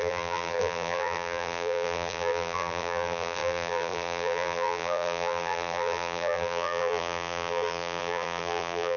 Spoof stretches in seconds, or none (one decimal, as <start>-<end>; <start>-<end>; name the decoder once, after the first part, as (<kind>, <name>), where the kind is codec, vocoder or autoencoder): 0.0-9.0 (vocoder, BigVGAN v2)